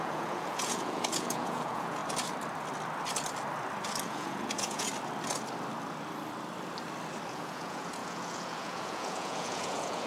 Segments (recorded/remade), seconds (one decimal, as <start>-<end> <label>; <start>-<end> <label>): 0.0-2.0 remade; 2.0-4.0 recorded; 4.0-4.9 remade; 4.9-7.3 recorded; 7.3-10.1 remade